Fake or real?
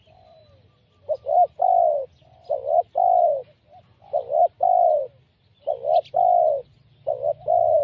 real